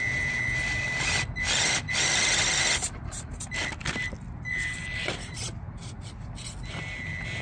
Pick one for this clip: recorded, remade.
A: recorded